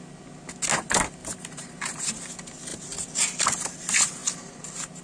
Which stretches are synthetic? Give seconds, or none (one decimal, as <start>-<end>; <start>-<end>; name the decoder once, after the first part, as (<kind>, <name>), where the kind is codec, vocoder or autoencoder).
1.2-2.1 (vocoder, BigVGAN v2)